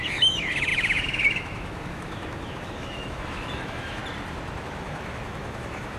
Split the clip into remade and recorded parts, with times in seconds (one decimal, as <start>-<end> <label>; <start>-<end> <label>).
0.0-4.0 remade; 4.0-4.6 recorded; 4.6-6.0 remade